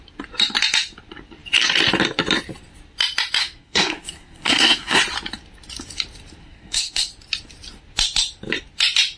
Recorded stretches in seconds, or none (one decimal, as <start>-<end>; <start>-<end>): 0.0-3.4; 5.0-6.4; 7.1-9.2